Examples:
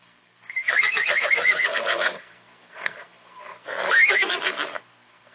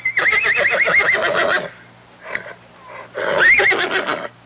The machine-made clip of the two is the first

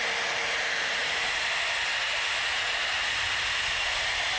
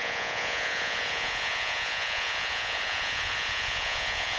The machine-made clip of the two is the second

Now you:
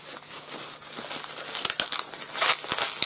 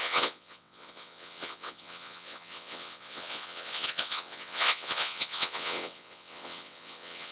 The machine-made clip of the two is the second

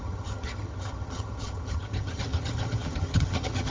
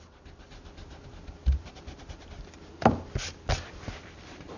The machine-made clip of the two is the first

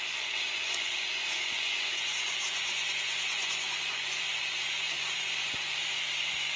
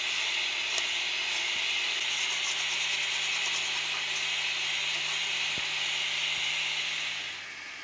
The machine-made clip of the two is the first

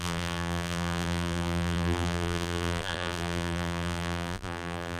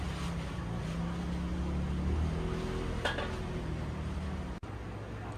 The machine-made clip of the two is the first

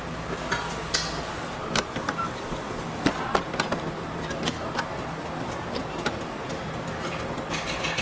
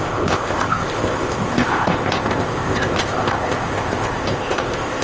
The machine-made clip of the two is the second